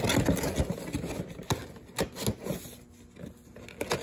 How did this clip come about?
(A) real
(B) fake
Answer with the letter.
A